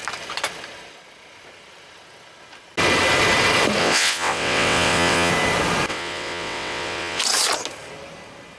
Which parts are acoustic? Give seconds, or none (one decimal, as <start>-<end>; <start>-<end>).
0.0-3.8; 5.3-5.9; 7.2-8.6